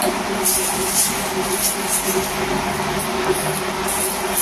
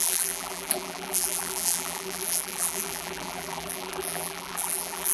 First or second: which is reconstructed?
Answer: second